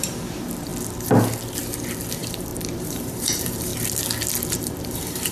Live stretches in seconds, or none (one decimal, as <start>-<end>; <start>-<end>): 0.7-2.1; 3.7-4.5